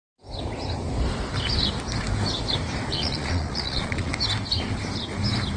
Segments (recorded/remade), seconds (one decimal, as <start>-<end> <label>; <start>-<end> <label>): 0.0-2.9 recorded; 2.9-4.1 remade; 4.1-5.6 recorded